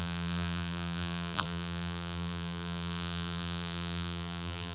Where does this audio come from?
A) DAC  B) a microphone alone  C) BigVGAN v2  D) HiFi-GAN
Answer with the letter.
C